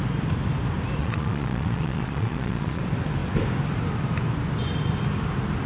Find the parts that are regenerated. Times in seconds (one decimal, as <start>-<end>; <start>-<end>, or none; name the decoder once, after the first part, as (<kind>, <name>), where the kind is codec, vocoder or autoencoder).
1.0-2.8 (vocoder, Vocos)